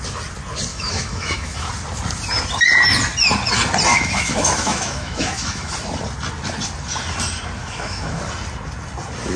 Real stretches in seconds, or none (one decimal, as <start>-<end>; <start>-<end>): 0.0-0.7; 1.7-3.9; 5.7-7.6; 8.2-9.4